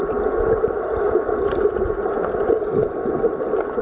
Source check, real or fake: real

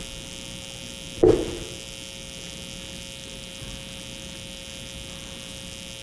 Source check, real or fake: real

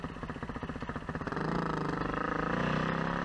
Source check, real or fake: real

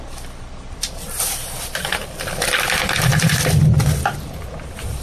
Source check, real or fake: fake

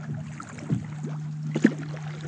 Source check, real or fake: real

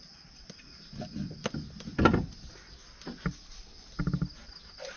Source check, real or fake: real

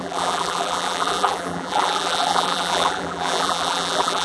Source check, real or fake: fake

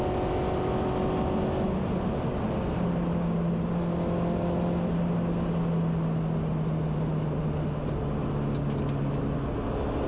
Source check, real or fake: real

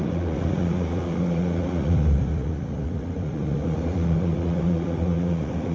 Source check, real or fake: fake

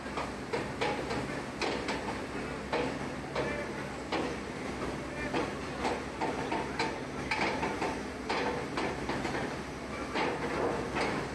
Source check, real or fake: real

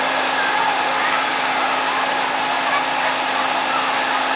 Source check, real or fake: real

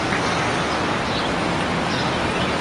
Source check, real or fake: real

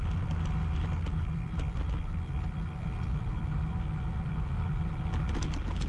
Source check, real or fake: real